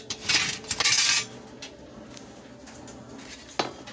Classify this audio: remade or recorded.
recorded